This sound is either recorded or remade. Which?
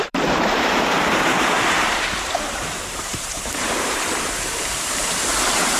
remade